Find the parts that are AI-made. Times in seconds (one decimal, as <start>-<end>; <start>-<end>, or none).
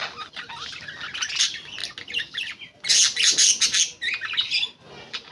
none